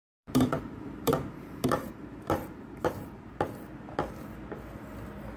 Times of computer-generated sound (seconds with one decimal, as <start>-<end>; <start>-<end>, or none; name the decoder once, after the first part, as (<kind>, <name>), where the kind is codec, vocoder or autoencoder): 0.0-3.2 (vocoder, BigVGAN v2)